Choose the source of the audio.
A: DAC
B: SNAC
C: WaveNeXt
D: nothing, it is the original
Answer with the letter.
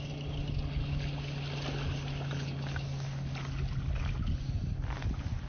D